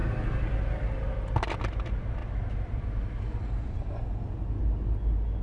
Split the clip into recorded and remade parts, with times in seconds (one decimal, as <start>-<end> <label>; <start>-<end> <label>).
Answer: 0.0-2.2 recorded; 2.2-2.8 remade; 2.8-5.4 recorded